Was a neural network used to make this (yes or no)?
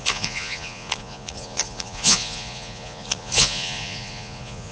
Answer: yes